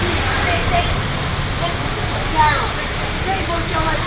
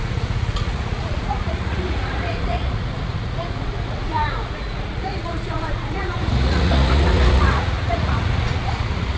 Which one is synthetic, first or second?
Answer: second